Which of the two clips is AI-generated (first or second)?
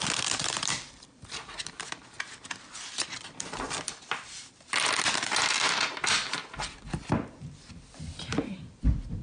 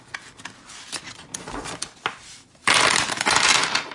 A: first